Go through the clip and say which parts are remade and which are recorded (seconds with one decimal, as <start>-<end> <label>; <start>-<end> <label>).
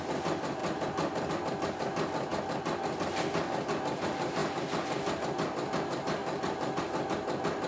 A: 0.0-6.2 recorded; 6.2-6.8 remade; 6.8-7.7 recorded